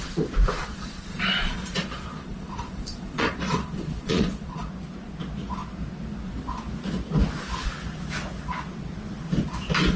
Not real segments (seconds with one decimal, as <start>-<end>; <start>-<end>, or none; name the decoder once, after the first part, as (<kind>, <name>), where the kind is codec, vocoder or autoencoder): 0.6-4.7 (vocoder, Vocos)